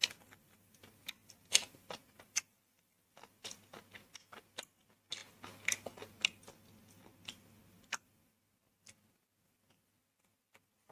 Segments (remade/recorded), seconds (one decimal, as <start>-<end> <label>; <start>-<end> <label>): 0.0-10.9 recorded